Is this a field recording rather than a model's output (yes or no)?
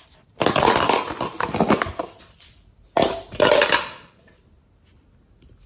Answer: yes